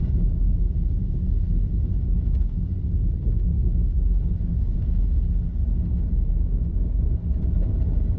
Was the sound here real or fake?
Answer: real